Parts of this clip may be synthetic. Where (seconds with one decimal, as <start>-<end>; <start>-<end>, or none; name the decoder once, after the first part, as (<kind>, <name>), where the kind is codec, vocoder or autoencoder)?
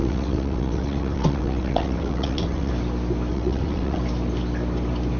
0.0-2.7 (vocoder, WaveNeXt); 3.3-4.0